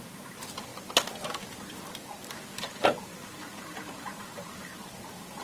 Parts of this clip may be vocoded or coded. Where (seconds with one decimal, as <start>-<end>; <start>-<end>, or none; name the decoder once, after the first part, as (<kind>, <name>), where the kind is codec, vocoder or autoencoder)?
0.0-0.7 (vocoder, BigVGAN v2); 2.4-4.7